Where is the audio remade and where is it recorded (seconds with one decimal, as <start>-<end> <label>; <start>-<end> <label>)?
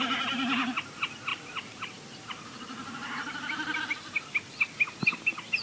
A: 0.0-1.3 recorded; 1.3-3.8 remade; 3.8-5.6 recorded